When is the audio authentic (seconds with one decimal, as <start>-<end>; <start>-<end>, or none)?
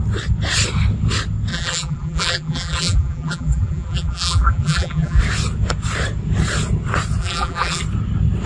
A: 0.0-1.5; 5.2-7.2; 7.8-8.5